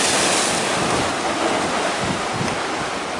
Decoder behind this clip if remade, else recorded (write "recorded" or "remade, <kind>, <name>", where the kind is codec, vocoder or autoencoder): recorded